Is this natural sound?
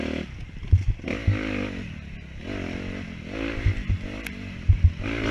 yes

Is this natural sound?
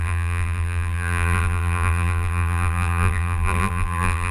no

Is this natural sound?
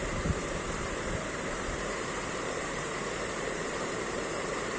no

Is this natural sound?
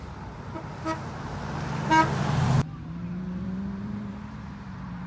no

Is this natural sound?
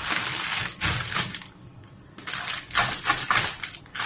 no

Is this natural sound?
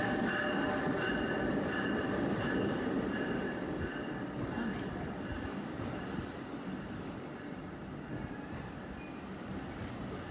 yes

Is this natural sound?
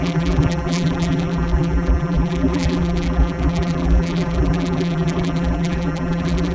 no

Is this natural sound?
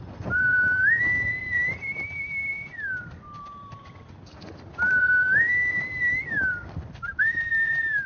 no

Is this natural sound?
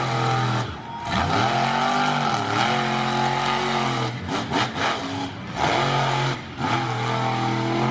yes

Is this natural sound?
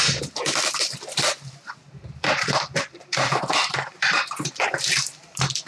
no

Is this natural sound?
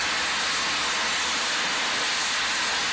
yes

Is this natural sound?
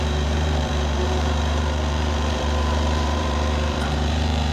no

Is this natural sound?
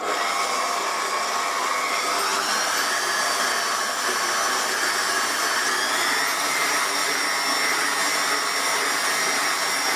yes